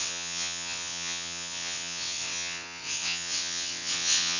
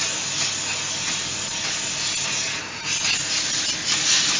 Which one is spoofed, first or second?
first